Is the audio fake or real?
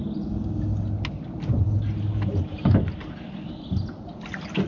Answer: real